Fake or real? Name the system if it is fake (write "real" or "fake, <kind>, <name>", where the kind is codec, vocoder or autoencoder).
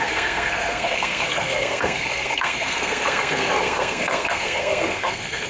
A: fake, codec, SNAC